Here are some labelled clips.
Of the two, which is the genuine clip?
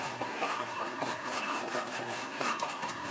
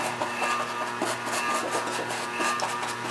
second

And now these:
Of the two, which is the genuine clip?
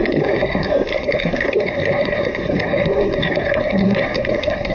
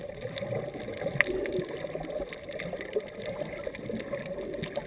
second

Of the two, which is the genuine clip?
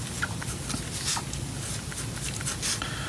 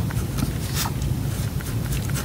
first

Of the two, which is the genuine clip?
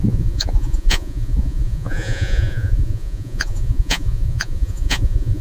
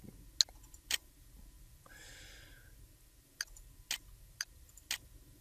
second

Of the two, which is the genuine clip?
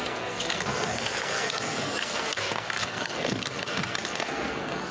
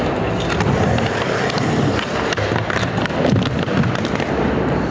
second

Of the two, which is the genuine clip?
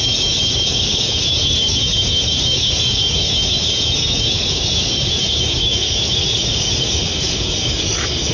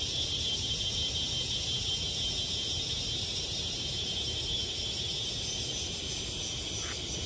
second